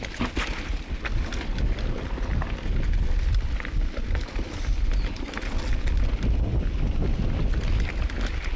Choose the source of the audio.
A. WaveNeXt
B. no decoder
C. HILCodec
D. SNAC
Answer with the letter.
B